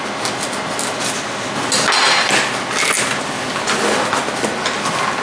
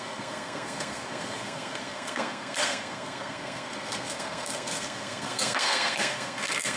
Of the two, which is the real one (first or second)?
first